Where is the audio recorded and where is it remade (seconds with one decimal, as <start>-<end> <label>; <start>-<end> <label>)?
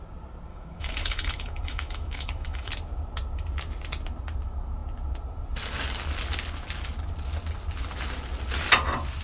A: 0.0-0.5 recorded; 0.5-2.7 remade; 2.7-9.2 recorded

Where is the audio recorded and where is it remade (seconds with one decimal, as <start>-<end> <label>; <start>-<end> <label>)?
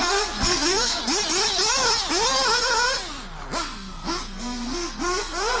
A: 0.0-1.0 remade; 1.0-3.6 recorded; 3.6-5.6 remade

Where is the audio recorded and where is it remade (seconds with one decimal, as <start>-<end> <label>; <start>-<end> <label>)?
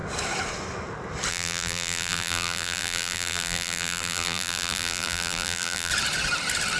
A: 0.0-1.3 recorded; 1.3-5.9 remade; 5.9-6.8 recorded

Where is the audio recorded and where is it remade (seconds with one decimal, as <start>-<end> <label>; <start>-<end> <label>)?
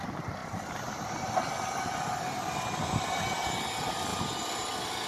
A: 0.0-5.1 recorded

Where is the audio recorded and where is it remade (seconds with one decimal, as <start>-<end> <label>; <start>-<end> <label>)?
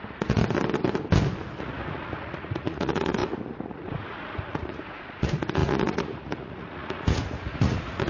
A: 0.0-0.4 remade; 0.4-1.6 recorded; 1.6-8.1 remade